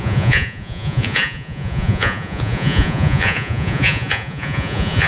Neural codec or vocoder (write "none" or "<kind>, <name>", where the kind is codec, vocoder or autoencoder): vocoder, Vocos